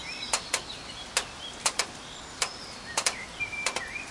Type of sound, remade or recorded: recorded